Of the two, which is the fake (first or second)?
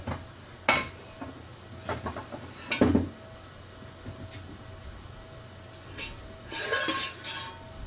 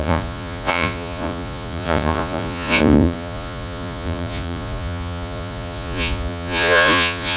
second